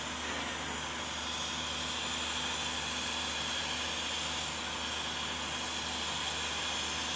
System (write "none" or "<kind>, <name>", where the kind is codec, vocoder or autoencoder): none